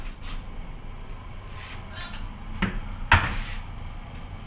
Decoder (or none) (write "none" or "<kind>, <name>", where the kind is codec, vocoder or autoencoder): none